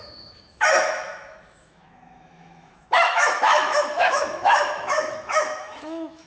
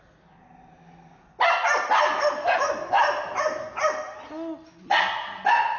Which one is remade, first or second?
first